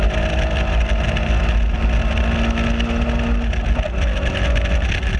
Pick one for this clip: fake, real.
real